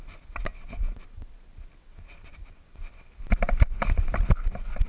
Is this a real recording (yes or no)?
yes